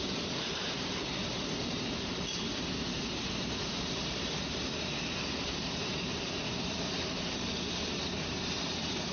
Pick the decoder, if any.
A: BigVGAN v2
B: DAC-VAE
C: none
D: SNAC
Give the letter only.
A